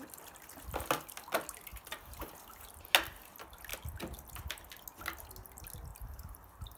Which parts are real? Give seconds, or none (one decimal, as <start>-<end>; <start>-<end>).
0.0-1.7; 2.3-5.9